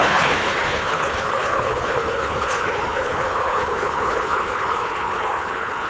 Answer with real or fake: fake